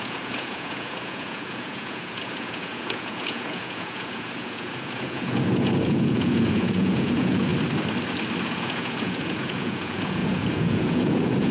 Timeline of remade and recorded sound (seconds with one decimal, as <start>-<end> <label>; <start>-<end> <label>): 0.0-7.5 remade; 7.5-8.4 recorded; 8.4-11.5 remade